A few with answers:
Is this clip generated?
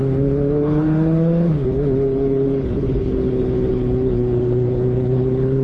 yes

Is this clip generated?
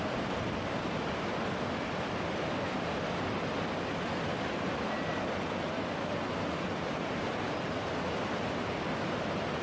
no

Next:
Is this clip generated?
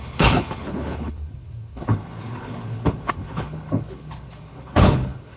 yes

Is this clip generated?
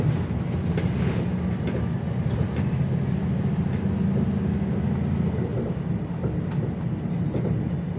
no